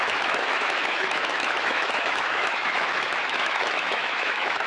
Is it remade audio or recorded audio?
remade